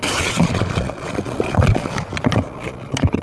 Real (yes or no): no